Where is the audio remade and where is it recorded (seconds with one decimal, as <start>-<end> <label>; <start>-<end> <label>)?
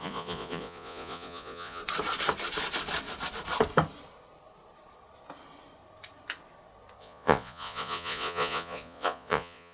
0.0-1.8 remade; 1.8-7.0 recorded; 7.0-9.7 remade